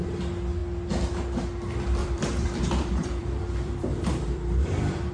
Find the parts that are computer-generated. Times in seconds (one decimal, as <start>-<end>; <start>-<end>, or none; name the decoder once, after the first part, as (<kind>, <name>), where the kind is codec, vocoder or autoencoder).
2.0-5.1 (vocoder, BigVGAN v2)